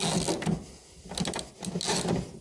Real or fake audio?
real